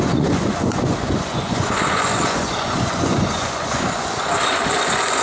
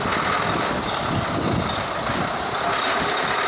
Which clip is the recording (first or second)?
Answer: second